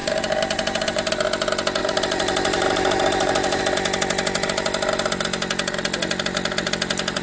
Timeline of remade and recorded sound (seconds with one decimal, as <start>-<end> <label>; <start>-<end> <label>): 0.0-1.1 remade; 1.1-1.8 recorded; 1.8-3.6 remade; 3.6-7.2 recorded